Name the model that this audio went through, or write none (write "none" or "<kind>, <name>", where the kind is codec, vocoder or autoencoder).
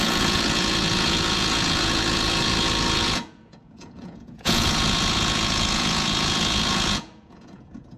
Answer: vocoder, Vocos